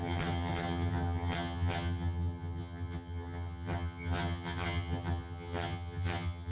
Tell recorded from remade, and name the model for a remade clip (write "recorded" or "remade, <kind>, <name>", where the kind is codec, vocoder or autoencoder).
remade, vocoder, HiFi-GAN